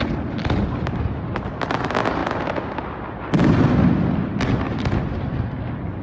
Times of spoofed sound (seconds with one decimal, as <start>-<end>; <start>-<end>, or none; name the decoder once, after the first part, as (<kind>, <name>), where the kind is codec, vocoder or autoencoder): none